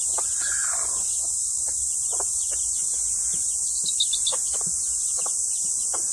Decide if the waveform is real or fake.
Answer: fake